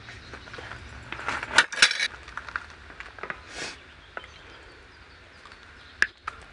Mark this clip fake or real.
real